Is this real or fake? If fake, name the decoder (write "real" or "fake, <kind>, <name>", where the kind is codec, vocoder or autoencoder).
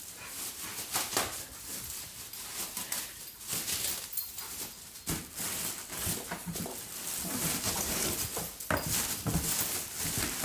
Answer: real